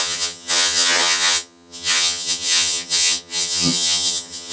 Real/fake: fake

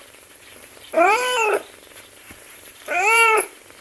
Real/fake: fake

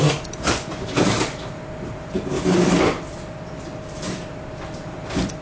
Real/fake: real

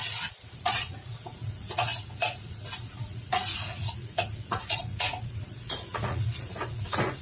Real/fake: fake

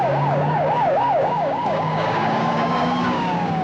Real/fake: fake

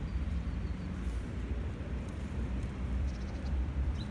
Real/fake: fake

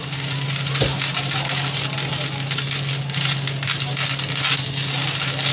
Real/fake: real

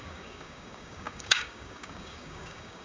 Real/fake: fake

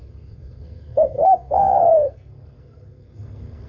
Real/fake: fake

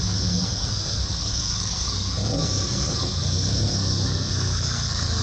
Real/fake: fake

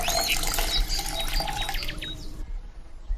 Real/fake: real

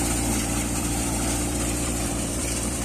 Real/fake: fake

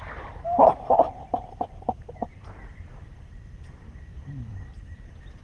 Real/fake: fake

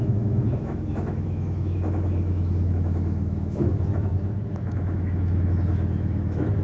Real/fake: fake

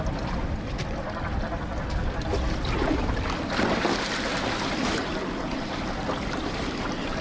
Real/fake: real